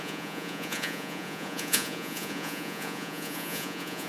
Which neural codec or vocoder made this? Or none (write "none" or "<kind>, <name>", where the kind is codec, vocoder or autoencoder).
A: vocoder, Vocos